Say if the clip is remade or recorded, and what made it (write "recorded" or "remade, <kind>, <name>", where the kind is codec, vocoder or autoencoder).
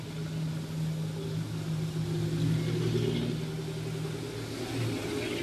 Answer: recorded